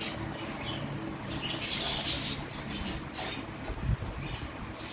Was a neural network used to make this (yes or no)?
no